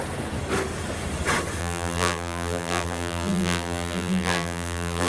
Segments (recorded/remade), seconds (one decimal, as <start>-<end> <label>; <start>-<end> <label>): 0.0-1.6 recorded; 1.6-5.1 remade